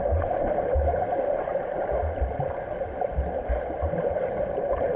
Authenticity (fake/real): real